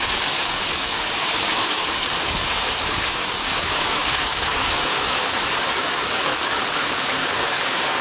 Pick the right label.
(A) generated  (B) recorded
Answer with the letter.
A